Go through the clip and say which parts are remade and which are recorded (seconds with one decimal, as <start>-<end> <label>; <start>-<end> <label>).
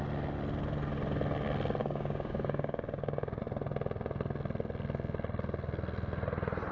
0.0-1.8 recorded; 1.8-3.4 remade; 3.4-6.7 recorded